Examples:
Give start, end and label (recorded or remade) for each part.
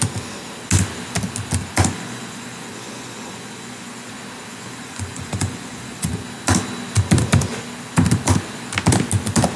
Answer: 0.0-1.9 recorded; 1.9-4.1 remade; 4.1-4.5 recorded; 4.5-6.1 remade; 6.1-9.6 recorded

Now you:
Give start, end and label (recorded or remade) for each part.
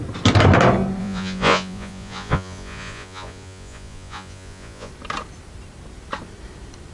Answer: 0.0-1.0 recorded; 1.0-4.9 remade; 4.9-6.9 recorded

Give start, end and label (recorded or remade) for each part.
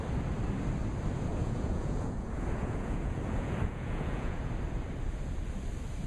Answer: 0.0-1.3 recorded; 1.3-4.5 remade; 4.5-6.1 recorded